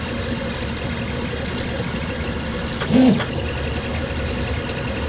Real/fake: real